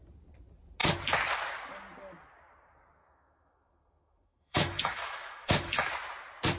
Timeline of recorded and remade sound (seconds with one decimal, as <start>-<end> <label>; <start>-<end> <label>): 0.0-3.0 recorded; 3.0-5.9 remade; 5.9-6.6 recorded